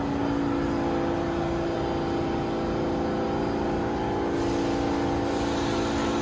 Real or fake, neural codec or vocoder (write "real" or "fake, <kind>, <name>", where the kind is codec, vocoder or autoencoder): real